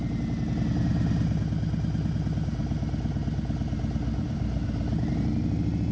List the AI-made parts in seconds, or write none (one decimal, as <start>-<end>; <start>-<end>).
none